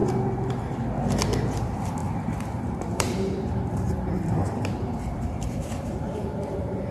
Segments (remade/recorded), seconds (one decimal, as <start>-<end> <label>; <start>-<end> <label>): 0.0-1.6 recorded; 1.6-6.9 remade